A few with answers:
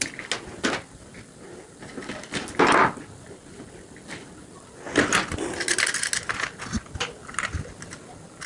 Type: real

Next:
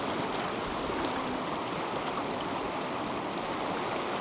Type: real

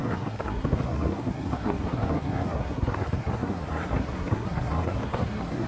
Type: fake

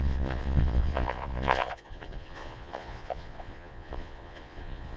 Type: fake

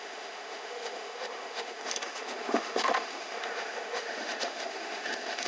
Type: fake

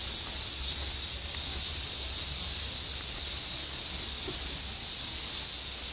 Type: real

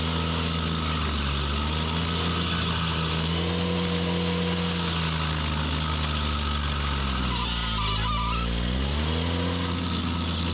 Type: real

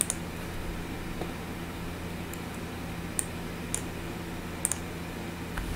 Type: real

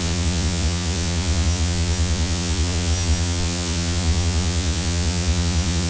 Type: fake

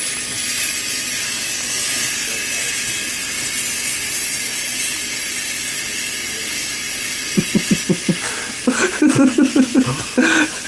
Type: real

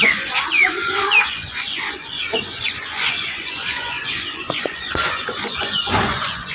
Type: fake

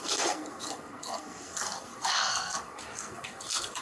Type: fake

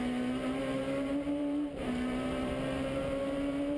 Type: fake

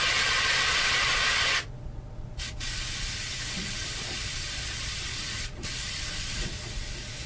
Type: fake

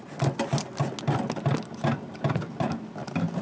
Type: real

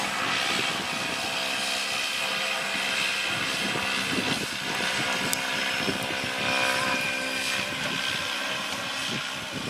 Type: real